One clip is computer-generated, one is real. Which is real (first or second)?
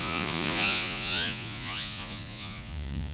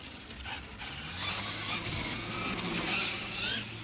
second